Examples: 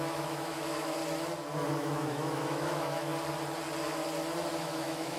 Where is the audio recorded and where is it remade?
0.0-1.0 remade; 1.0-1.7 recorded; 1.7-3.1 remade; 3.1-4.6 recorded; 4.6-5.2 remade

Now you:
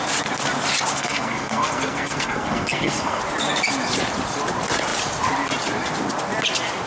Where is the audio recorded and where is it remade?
0.0-0.9 recorded; 0.9-3.2 remade; 3.2-6.9 recorded

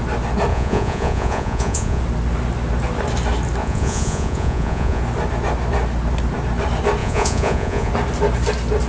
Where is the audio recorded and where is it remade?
0.0-0.5 recorded; 0.5-2.0 remade; 2.0-3.6 recorded; 3.6-5.0 remade; 5.0-7.0 recorded; 7.0-7.9 remade; 7.9-8.9 recorded

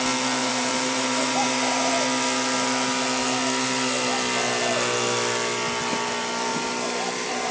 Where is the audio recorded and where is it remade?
0.0-0.4 recorded; 0.4-1.9 remade; 1.9-6.5 recorded; 6.5-7.5 remade

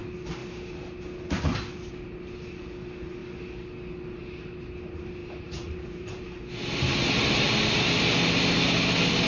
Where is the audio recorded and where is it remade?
0.0-5.2 recorded; 5.2-6.2 remade; 6.2-9.3 recorded

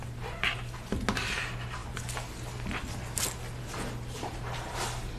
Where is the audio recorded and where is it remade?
0.0-5.2 recorded

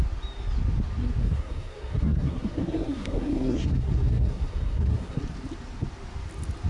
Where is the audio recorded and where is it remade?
0.0-1.2 recorded; 1.2-5.2 remade; 5.2-6.7 recorded